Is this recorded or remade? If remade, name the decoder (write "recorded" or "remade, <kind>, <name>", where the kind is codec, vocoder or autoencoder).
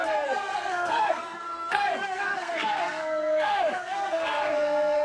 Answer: remade, codec, SNAC